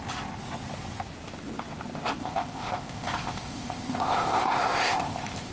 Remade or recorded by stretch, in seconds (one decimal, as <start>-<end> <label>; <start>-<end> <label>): 0.0-2.2 recorded; 2.2-5.5 remade